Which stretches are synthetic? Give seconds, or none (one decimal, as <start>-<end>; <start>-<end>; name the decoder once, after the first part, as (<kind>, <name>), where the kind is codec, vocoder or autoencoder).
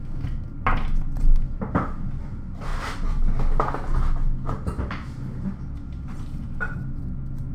none